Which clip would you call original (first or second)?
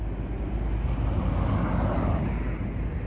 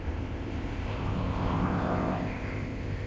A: first